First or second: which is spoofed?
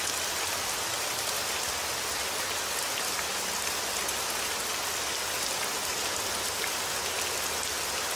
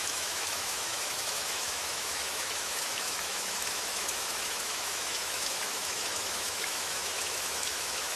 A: second